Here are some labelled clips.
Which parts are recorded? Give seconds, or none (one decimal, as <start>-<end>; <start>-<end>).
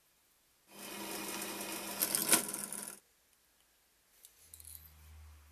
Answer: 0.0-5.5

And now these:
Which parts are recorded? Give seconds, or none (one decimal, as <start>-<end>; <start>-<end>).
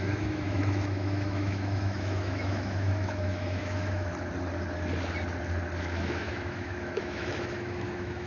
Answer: 4.1-5.8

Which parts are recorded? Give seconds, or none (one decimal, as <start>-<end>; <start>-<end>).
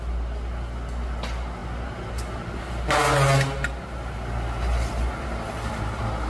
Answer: 0.0-6.3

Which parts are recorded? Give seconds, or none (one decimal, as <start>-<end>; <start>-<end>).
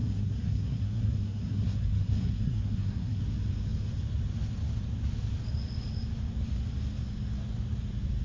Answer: 3.2-8.2